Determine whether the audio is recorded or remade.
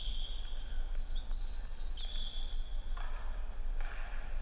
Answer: recorded